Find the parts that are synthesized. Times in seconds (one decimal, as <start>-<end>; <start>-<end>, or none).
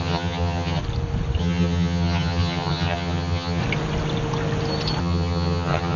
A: 0.0-0.8; 1.4-3.6; 5.0-6.0